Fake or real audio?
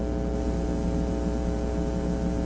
real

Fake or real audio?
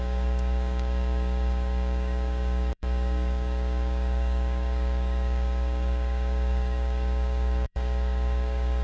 fake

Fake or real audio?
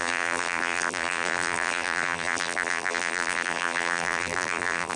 fake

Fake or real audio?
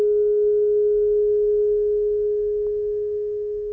fake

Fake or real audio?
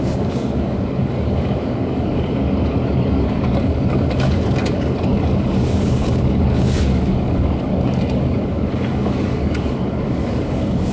fake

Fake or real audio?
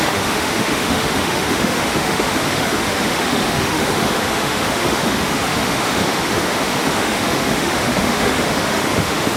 fake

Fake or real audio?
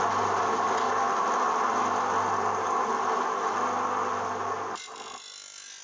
real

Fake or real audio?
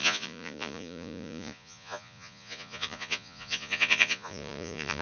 fake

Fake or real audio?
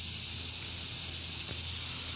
real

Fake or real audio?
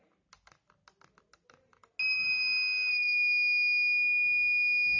real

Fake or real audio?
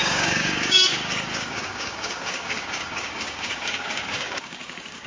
fake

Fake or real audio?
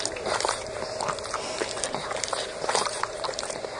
fake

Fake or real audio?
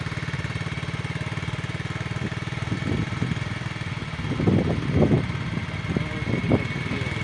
real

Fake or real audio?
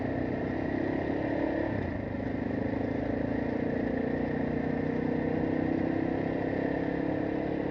real